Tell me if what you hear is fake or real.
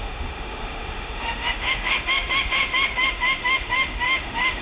fake